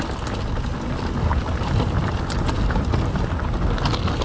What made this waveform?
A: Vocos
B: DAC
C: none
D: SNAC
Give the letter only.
C